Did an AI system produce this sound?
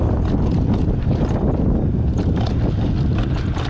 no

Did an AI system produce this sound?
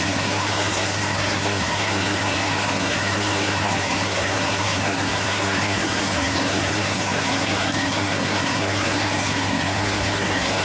yes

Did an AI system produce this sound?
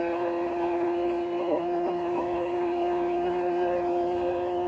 yes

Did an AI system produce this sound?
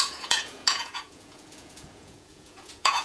yes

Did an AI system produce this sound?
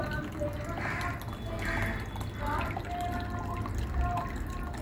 no